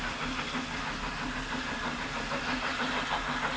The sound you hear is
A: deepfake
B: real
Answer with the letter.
B